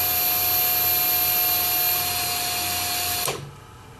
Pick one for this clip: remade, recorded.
recorded